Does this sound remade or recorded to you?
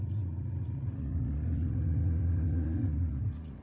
remade